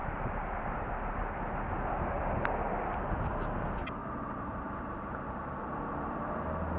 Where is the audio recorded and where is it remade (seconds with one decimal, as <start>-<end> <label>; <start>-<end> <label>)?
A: 0.0-1.1 remade; 1.1-4.0 recorded; 4.0-4.7 remade; 4.7-6.8 recorded